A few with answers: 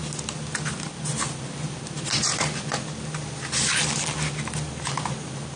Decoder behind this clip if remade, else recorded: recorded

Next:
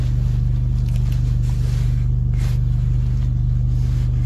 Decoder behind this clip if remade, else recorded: recorded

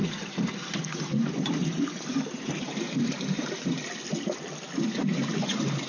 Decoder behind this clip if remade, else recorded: recorded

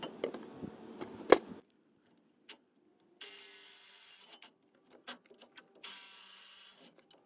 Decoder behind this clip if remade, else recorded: recorded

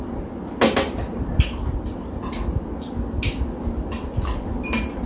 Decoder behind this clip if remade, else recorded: recorded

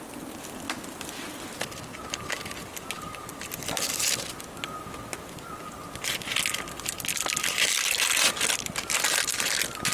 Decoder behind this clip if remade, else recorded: recorded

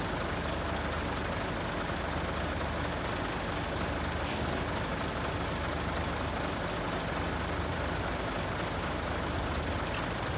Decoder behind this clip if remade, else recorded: recorded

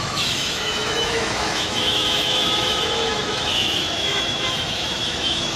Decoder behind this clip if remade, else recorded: remade, autoencoder, DAC-VAE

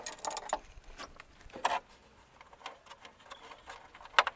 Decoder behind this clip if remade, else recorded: recorded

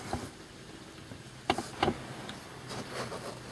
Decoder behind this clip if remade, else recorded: recorded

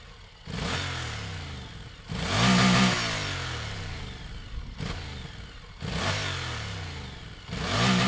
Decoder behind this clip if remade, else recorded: recorded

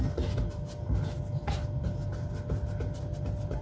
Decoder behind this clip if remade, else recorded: recorded